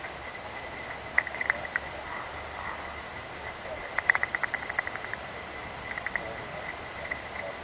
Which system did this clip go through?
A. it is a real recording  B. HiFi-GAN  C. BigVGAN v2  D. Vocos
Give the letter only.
A